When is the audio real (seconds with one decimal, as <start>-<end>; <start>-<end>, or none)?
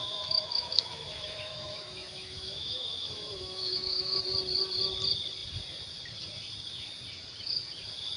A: 4.2-8.2